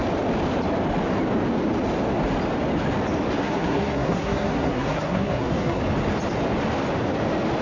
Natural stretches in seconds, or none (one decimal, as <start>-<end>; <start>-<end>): 0.0-3.4; 5.8-7.6